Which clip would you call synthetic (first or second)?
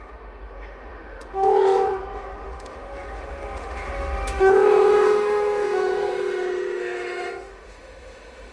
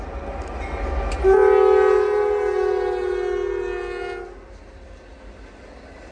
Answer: first